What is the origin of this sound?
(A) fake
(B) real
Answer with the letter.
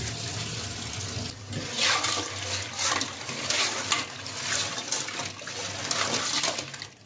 B